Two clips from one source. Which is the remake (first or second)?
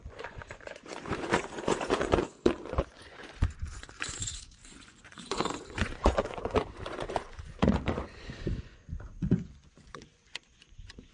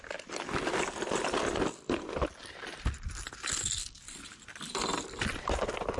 first